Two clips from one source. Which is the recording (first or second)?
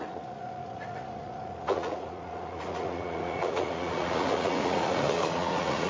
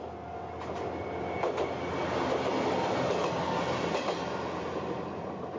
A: second